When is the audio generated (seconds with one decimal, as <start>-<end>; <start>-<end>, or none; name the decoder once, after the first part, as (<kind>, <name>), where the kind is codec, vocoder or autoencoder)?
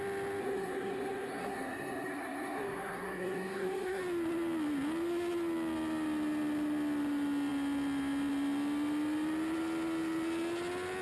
0.4-4.0 (codec, SNAC)